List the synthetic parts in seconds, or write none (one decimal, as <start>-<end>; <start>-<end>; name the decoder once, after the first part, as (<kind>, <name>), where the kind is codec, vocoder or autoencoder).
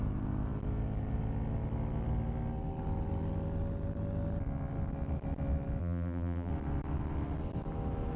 5.8-6.5 (vocoder, BigVGAN v2)